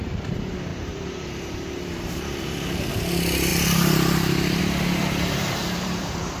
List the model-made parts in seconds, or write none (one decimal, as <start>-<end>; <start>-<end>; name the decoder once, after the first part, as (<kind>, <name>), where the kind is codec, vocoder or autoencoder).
0.7-2.9 (vocoder, BigVGAN v2); 3.5-4.6; 5.6-6.4